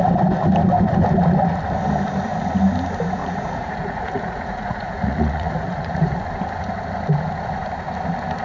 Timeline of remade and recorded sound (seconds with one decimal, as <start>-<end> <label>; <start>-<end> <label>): 0.0-3.2 recorded; 3.2-6.2 remade; 6.2-8.4 recorded